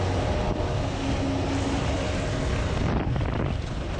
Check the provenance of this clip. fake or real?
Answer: real